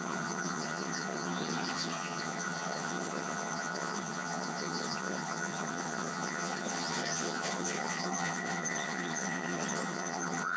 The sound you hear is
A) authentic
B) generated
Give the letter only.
B